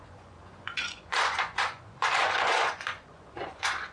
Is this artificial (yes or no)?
yes